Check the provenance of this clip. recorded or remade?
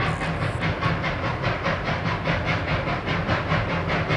recorded